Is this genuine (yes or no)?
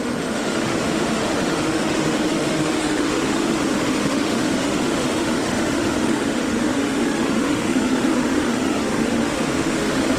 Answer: no